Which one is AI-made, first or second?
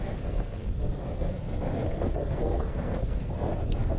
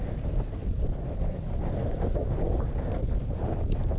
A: first